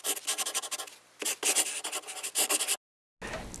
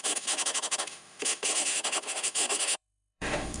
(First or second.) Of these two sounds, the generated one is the second